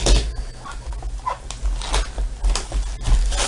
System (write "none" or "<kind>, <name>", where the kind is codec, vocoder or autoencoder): none